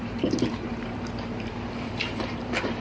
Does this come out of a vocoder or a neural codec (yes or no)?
yes